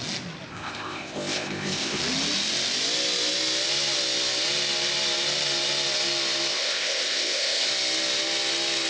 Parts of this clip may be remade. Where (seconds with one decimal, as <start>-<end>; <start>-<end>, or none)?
0.5-2.0; 6.5-7.7